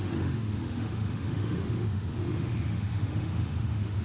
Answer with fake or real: fake